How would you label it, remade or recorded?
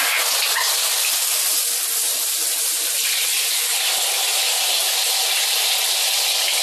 recorded